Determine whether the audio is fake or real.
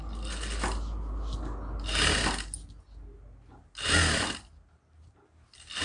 real